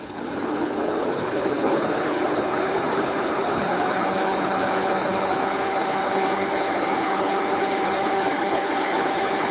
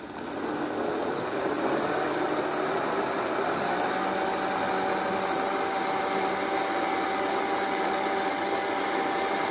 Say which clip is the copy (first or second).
first